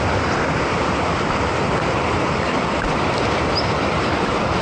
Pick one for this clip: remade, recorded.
remade